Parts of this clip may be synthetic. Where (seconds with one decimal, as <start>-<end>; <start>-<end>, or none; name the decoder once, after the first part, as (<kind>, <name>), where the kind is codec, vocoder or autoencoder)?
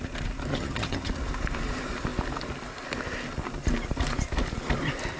0.5-1.1 (vocoder, HiFi-GAN)